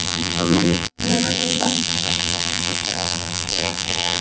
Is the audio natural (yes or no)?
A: no